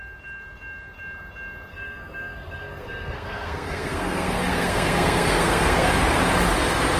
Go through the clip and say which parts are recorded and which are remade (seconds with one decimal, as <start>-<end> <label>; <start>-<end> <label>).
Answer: 0.0-1.7 recorded; 1.7-5.9 remade; 5.9-7.0 recorded